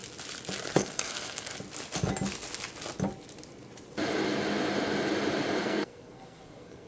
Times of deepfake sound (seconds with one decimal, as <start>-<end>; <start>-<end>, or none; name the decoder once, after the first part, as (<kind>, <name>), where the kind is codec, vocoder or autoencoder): 0.7-1.5 (codec, SNAC); 5.6-6.9